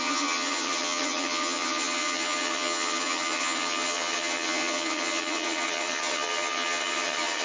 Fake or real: fake